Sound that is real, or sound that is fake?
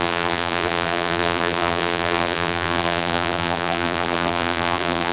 fake